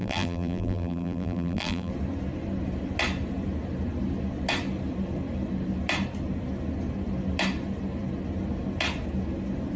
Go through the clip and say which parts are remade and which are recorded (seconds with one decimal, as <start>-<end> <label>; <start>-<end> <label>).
0.0-1.9 remade; 1.9-9.8 recorded